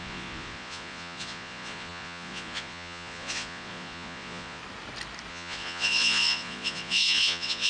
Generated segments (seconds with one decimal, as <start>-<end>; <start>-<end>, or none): 0.0-4.6; 5.3-7.7